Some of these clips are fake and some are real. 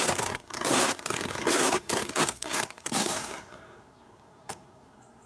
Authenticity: fake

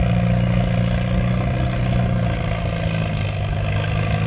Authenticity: real